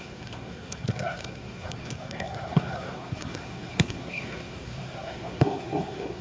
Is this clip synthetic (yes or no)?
yes